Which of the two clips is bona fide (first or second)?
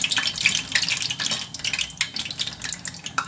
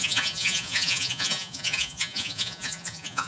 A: first